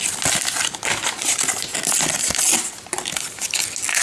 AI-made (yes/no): no